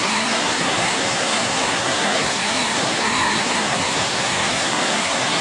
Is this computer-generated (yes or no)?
yes